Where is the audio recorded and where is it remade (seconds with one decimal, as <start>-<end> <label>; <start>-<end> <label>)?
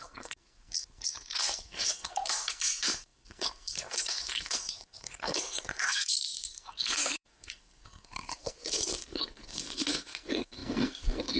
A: 0.0-11.4 remade